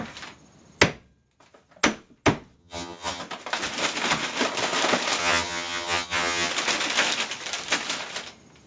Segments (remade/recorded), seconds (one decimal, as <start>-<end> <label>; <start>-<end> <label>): 0.0-2.6 recorded; 2.6-3.2 remade; 3.2-5.2 recorded; 5.2-6.5 remade; 6.5-8.7 recorded